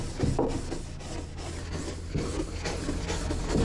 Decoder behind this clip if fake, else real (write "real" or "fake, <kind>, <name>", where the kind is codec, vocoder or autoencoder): real